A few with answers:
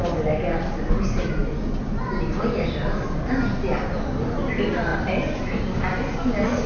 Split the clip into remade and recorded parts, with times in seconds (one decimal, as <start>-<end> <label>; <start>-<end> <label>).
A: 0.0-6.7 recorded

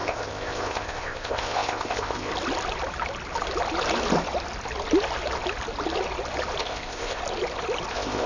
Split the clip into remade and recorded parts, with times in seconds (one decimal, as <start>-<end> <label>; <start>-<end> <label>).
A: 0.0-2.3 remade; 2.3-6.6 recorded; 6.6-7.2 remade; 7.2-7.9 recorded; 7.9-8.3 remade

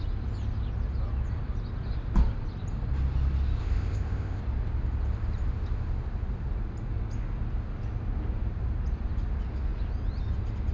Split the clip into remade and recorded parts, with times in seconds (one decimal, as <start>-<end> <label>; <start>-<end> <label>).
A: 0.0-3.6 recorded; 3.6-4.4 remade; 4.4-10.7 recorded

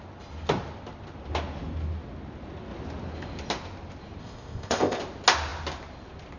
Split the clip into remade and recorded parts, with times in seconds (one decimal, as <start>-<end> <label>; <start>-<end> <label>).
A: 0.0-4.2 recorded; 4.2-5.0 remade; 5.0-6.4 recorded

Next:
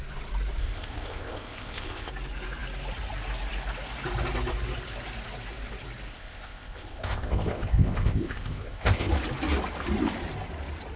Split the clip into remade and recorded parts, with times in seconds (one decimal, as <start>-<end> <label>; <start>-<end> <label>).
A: 0.0-0.6 recorded; 0.6-2.1 remade; 2.1-6.1 recorded; 6.1-9.1 remade; 9.1-11.0 recorded